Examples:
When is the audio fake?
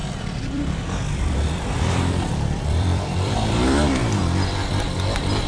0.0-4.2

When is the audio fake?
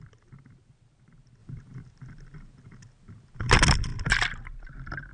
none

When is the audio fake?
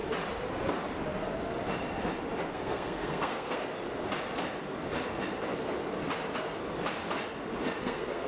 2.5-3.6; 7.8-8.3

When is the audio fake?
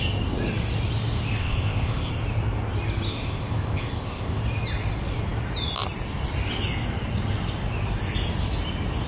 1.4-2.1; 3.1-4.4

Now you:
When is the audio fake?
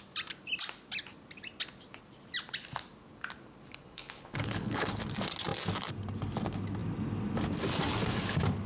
3.8-4.9